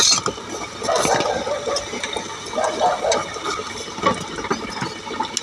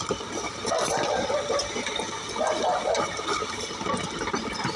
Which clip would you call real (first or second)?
first